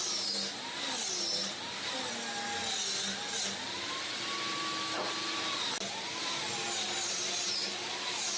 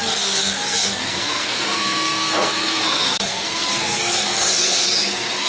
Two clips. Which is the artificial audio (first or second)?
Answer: second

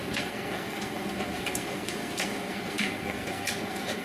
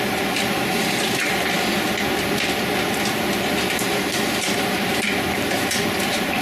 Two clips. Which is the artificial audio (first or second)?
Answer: first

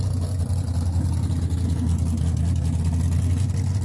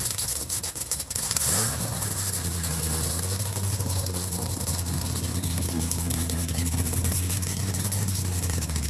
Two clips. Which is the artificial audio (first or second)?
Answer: second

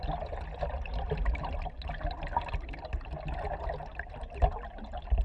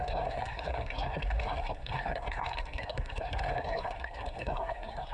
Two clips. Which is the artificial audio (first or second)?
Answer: second